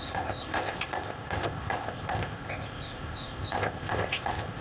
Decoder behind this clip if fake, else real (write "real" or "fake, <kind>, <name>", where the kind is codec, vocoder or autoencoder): fake, codec, ZipCodec